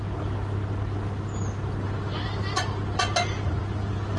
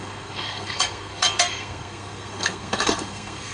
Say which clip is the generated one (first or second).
second